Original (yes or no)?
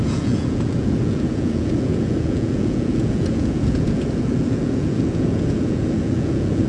no